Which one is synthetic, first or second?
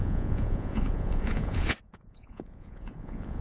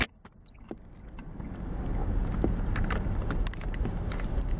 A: first